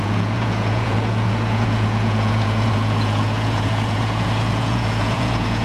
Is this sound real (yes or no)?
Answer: no